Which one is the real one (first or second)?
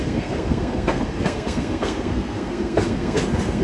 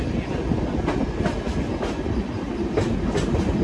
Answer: second